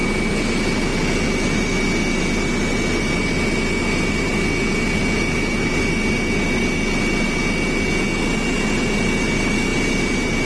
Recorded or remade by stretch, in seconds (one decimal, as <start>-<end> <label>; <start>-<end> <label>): 0.0-10.4 recorded